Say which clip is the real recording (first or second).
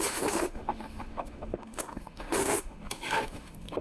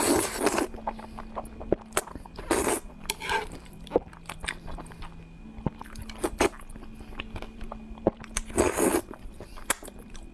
second